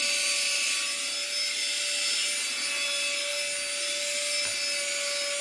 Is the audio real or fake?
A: real